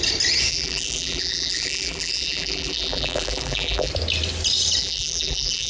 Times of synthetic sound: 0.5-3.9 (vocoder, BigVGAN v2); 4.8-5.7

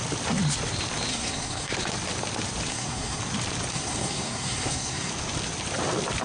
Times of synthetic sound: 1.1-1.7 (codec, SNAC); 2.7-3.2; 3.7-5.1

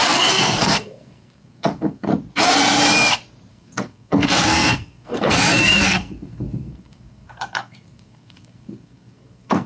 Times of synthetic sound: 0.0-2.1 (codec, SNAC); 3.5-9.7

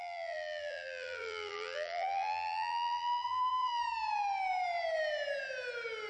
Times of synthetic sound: 0.0-3.8 (vocoder, BigVGAN v2)

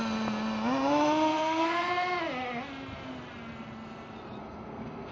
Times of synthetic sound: 1.3-1.9 (codec, SNAC); 4.4-5.1